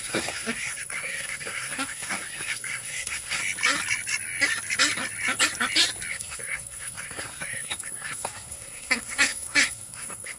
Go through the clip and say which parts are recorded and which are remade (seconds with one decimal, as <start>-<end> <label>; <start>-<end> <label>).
0.0-3.4 remade; 3.4-6.1 recorded; 6.1-10.4 remade